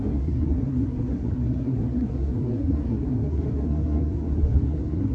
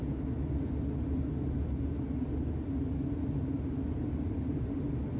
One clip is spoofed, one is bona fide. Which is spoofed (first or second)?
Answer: first